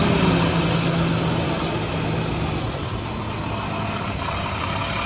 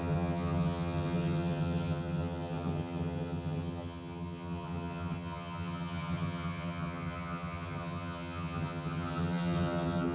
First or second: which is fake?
second